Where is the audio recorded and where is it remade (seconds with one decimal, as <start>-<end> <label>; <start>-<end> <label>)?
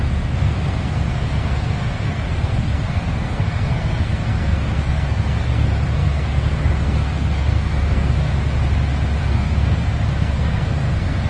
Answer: 0.0-8.3 remade; 8.3-9.2 recorded; 9.2-11.3 remade